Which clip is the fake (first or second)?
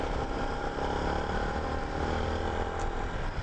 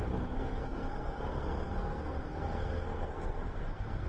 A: second